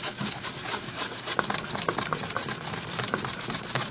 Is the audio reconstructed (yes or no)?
yes